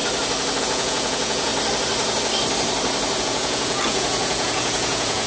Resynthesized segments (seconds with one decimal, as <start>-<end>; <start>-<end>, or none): 0.6-1.5; 3.2-5.3